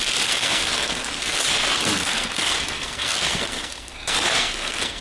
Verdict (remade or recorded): remade